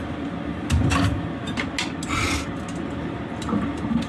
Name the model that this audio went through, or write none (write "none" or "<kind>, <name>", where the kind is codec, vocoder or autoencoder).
none